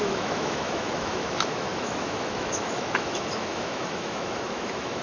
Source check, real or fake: fake